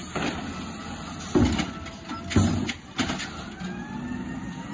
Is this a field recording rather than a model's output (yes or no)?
yes